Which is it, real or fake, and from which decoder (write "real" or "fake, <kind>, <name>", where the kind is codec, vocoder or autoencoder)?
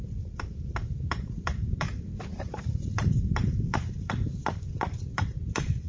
fake, vocoder, BigVGAN v2